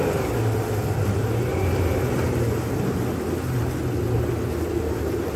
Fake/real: real